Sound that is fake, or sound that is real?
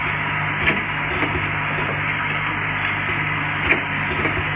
real